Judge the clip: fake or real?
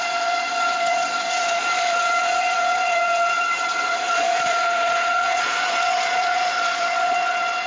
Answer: fake